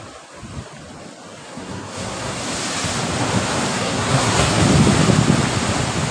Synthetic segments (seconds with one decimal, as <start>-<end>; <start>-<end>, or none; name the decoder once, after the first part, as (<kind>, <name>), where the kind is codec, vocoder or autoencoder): 1.4-2.4 (codec, SNAC); 3.7-4.6